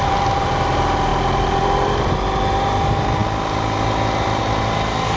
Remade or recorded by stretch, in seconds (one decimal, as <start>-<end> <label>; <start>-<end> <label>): 0.0-5.2 recorded